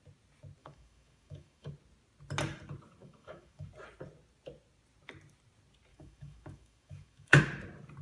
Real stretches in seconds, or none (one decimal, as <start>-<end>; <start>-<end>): 0.0-0.6; 1.7-3.0; 3.7-5.9; 7.4-8.0